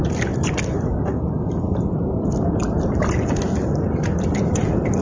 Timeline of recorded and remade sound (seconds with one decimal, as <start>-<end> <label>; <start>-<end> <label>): 0.0-5.0 recorded